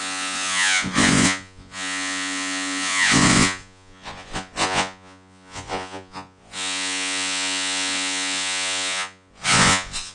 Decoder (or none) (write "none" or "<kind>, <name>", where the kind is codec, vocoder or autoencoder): vocoder, Vocos